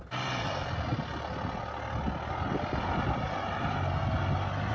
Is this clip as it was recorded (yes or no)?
yes